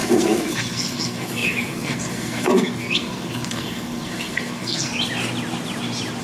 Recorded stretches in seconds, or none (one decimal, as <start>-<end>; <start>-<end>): 4.9-6.2